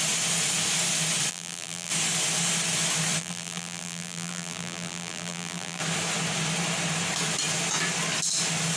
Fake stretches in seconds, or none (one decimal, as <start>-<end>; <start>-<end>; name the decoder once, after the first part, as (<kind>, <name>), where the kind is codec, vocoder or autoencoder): 1.3-1.9 (vocoder, BigVGAN v2); 3.2-5.8